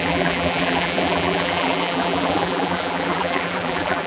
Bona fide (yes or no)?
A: no